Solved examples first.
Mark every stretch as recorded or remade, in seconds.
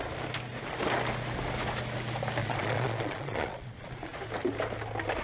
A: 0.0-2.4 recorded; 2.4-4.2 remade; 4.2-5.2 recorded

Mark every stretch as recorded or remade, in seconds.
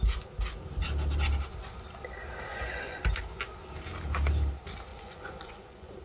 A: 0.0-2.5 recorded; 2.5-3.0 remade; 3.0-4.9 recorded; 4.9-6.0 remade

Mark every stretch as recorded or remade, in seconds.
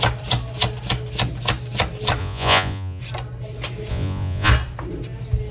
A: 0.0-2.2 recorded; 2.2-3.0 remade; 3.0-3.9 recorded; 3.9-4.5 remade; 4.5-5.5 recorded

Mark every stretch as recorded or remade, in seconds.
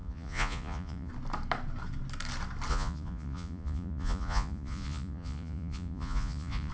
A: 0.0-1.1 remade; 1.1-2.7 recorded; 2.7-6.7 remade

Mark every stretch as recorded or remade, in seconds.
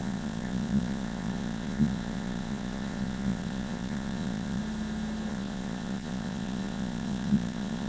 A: 0.0-4.6 remade; 4.6-5.3 recorded; 5.3-7.9 remade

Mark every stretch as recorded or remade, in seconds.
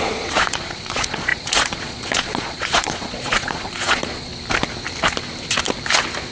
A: 0.0-4.3 remade; 4.3-6.3 recorded